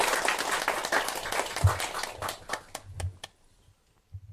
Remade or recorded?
recorded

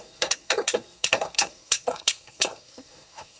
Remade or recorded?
remade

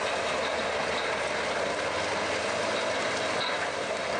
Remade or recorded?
recorded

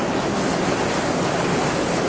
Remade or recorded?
recorded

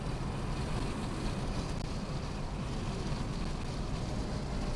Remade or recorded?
recorded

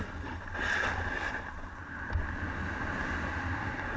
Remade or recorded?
recorded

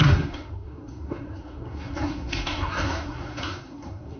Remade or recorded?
remade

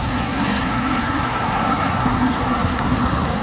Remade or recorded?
remade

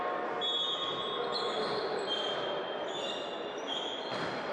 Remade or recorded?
recorded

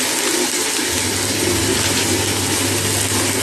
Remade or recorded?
recorded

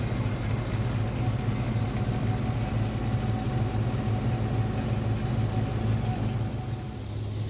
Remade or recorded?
recorded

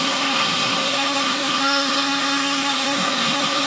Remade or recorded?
remade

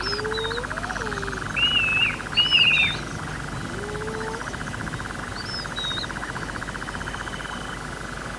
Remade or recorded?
recorded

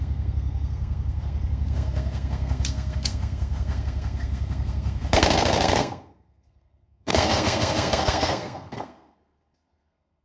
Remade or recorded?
remade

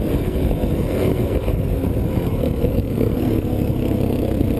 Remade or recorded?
remade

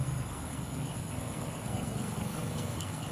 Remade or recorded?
remade